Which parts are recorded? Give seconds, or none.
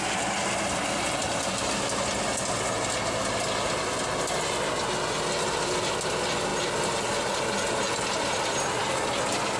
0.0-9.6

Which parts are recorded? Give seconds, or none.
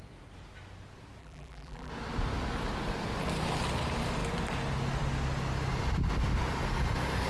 0.0-1.2; 1.9-7.3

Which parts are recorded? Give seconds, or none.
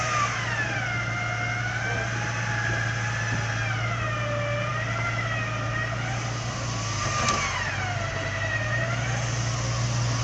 0.0-10.2